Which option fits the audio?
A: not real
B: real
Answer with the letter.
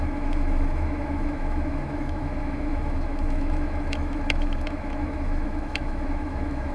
A